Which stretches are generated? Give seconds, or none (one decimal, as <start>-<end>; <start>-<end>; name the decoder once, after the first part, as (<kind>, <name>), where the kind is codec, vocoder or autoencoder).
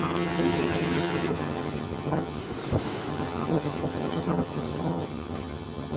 0.0-2.4 (vocoder, HiFi-GAN); 3.1-6.0